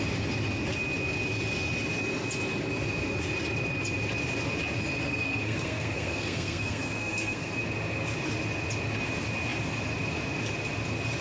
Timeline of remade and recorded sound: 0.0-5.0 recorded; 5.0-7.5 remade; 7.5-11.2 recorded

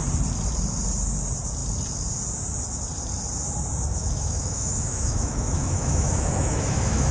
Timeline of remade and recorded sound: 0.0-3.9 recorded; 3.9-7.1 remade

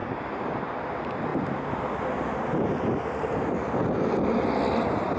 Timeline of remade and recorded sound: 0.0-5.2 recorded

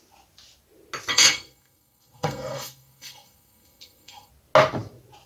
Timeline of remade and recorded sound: 0.0-1.1 recorded; 1.1-4.3 remade; 4.3-5.3 recorded

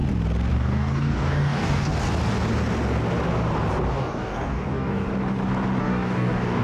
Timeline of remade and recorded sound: 0.0-0.5 recorded; 0.5-1.9 remade; 1.9-3.9 recorded; 3.9-5.1 remade; 5.1-5.8 recorded; 5.8-6.6 remade